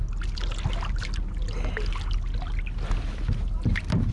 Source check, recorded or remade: recorded